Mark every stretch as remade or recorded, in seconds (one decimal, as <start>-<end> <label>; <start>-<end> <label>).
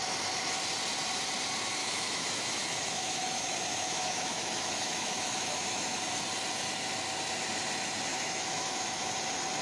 0.0-1.8 recorded; 1.8-6.0 remade; 6.0-8.1 recorded; 8.1-9.1 remade; 9.1-9.6 recorded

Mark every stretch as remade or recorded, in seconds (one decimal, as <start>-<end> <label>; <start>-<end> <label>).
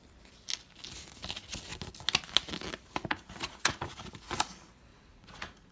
0.0-3.1 recorded; 3.1-4.0 remade; 4.0-4.9 recorded; 4.9-5.7 remade